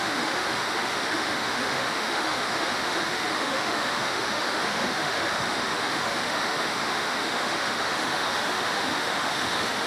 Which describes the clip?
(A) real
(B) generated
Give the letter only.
B